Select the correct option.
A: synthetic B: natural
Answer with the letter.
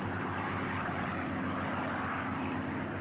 B